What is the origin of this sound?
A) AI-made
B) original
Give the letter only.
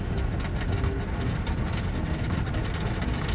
B